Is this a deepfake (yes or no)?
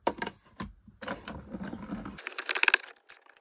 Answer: no